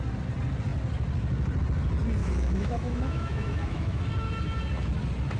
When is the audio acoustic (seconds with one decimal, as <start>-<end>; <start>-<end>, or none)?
0.0-2.2; 4.0-5.4